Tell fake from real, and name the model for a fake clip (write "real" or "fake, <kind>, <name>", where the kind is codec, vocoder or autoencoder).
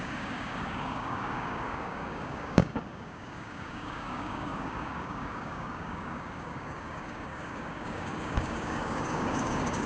fake, codec, DAC